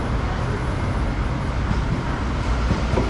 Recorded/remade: recorded